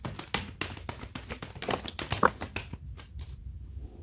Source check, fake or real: real